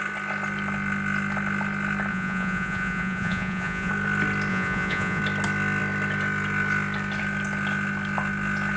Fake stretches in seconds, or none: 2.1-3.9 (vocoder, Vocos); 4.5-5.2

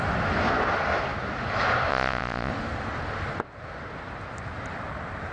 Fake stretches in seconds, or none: 1.9-2.5 (vocoder, Vocos)

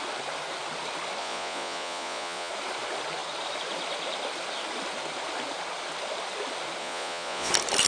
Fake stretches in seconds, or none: 1.2-2.5 (vocoder, Vocos); 6.8-7.5

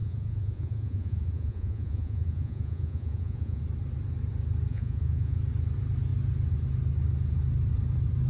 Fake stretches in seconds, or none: 0.0-3.6 (vocoder, Vocos); 4.7-5.4

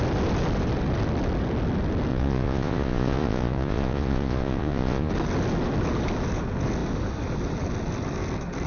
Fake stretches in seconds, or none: 2.1-5.1 (vocoder, Vocos)

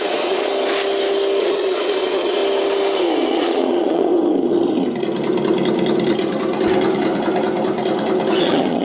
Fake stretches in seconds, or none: 0.0-0.5 (vocoder, Vocos); 1.4-2.4; 3.3-4.1; 8.4-8.8

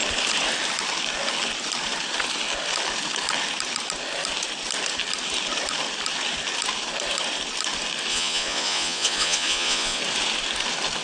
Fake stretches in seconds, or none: 8.1-10.0 (vocoder, Vocos)

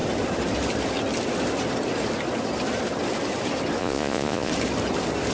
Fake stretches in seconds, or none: 3.8-4.5 (vocoder, Vocos)